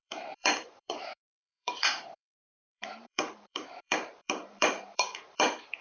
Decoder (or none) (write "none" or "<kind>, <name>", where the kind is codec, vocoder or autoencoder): vocoder, BigVGAN v2